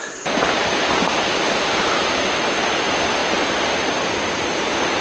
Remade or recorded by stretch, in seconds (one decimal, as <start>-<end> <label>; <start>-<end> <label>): 0.0-5.0 recorded